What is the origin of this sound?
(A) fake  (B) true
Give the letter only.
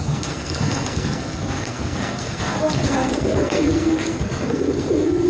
A